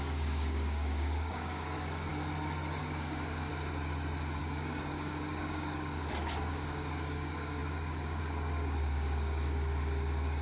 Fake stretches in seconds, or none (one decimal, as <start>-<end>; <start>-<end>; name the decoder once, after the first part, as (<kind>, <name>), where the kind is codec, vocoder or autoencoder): 0.0-2.1 (codec, DAC); 2.8-3.5; 4.4-10.4